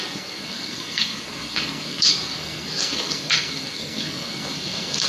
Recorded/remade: remade